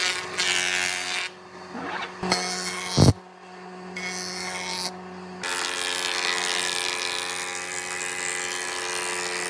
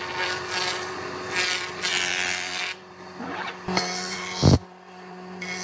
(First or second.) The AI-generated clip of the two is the second